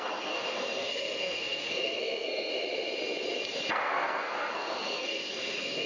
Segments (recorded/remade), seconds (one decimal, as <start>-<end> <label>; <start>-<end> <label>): 0.0-2.5 remade; 2.5-3.7 recorded; 3.7-5.9 remade